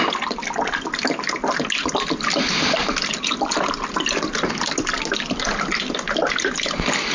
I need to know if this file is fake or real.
real